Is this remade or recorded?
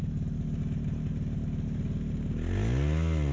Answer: recorded